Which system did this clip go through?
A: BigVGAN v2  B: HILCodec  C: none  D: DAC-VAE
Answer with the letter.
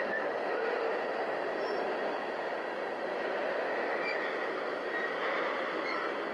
C